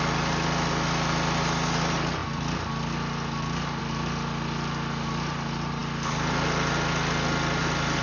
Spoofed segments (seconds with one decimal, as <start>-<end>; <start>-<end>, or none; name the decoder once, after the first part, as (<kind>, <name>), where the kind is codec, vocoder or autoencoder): none